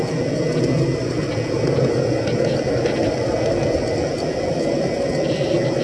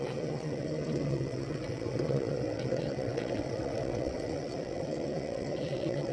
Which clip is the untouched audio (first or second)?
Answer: first